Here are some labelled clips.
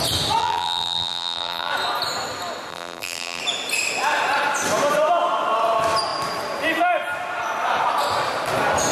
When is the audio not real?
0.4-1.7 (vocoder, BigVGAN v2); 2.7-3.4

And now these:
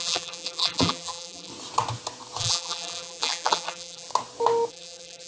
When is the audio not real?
0.0-1.5 (vocoder, BigVGAN v2); 2.4-4.1; 4.7-5.3

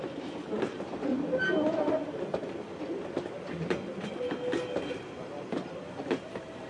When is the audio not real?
0.0-1.1 (vocoder, BigVGAN v2); 5.1-6.7

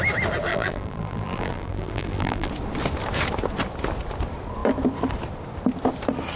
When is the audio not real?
0.5-2.5 (vocoder, BigVGAN v2)

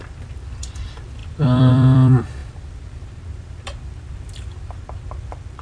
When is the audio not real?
0.0-5.6 (vocoder, BigVGAN v2)